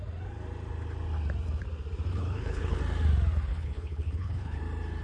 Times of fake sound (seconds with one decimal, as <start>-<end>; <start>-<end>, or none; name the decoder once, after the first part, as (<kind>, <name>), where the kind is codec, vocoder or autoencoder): 2.1-2.8 (codec, HILCodec); 3.5-4.6